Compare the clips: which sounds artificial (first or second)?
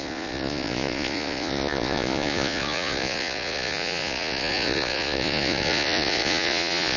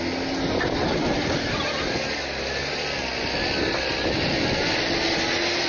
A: first